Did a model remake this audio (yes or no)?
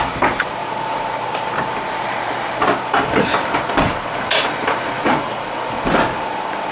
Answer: yes